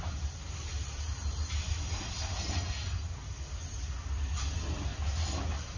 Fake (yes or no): no